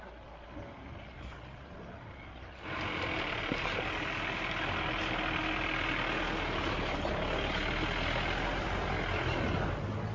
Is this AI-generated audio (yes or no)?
no